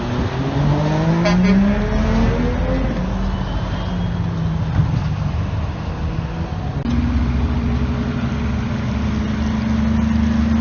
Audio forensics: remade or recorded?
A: recorded